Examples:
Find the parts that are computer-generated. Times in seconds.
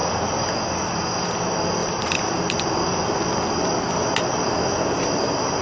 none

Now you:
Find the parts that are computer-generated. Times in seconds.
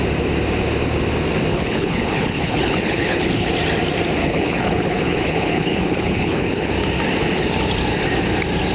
1.5-3.5 (codec, HILCodec); 4.2-6.7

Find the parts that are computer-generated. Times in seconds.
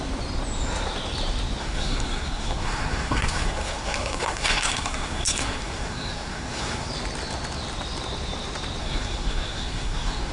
1.6-6.9 (codec, SNAC); 8.8-10.3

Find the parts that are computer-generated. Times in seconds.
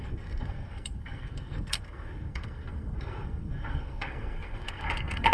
0.0-5.3 (codec, SNAC)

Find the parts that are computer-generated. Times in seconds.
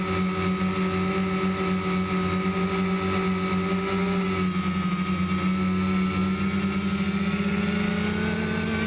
none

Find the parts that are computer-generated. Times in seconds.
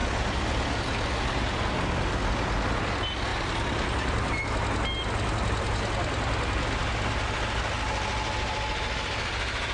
none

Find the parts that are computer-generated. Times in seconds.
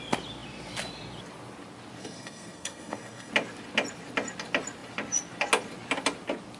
2.0-3.3 (codec, SNAC)